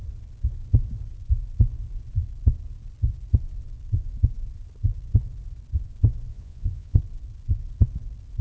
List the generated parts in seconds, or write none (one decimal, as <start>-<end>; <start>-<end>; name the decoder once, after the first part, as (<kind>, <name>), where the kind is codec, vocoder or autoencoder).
6.3-7.0 (vocoder, Vocos)